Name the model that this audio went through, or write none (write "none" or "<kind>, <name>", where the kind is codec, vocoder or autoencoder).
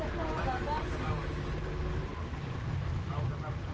none